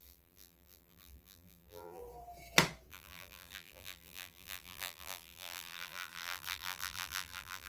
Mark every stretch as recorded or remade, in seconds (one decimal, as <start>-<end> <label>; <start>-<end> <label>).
0.0-2.0 remade; 2.0-2.9 recorded; 2.9-7.7 remade